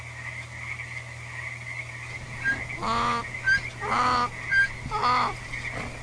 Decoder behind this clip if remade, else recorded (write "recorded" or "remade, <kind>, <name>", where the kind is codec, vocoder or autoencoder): recorded